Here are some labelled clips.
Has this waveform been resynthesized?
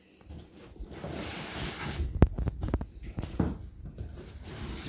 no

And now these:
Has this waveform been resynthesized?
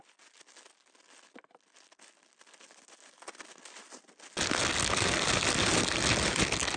no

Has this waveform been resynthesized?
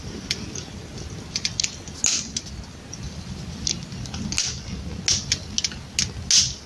no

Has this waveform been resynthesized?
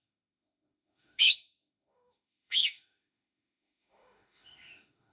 yes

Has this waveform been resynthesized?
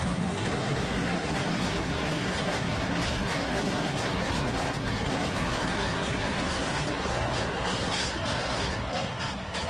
yes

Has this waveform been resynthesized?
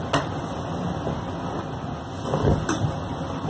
no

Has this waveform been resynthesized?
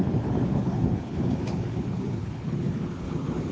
yes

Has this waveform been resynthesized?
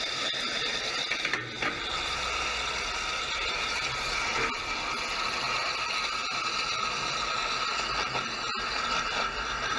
no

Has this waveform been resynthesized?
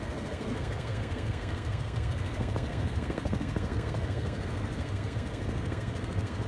yes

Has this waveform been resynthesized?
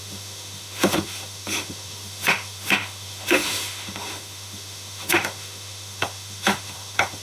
yes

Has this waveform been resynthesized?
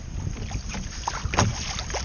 no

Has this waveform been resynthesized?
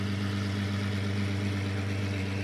no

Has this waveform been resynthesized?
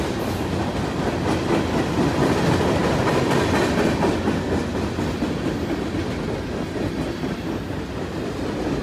no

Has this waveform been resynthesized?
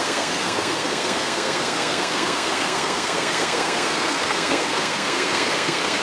yes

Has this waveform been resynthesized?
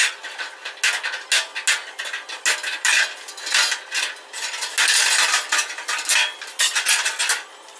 no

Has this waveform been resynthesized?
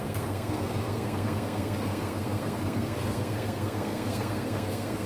yes